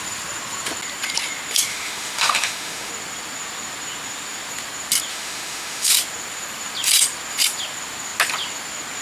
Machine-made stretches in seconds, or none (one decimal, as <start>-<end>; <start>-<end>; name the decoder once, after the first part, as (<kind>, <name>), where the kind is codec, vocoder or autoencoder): 1.7-2.9 (autoencoder, DAC-VAE); 5.1-5.9